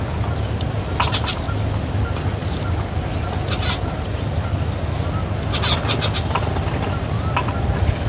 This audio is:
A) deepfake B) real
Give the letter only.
B